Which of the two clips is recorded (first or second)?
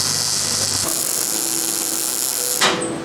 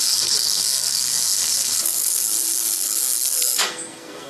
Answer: first